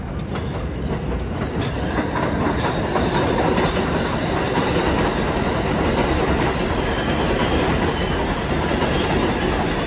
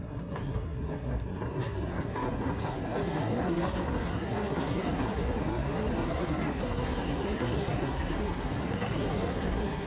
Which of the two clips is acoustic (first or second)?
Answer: first